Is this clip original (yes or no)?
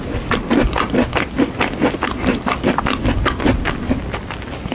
yes